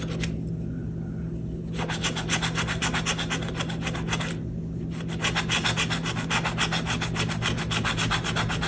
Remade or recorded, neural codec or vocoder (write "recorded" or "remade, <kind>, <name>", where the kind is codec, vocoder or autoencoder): recorded